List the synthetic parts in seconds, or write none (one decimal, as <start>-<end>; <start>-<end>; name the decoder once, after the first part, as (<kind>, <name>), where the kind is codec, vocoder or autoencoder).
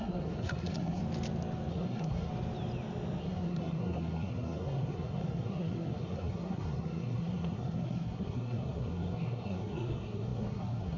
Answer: 0.0-1.0 (codec, SNAC); 1.7-2.3; 3.2-11.0